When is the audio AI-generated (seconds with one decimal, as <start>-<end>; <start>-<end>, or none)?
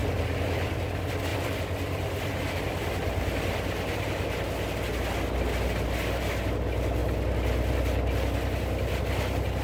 0.0-0.7